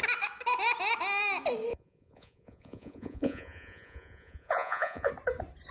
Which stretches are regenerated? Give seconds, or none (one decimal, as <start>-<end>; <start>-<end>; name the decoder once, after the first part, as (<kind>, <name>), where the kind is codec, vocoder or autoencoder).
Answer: 1.7-5.1 (vocoder, Vocos)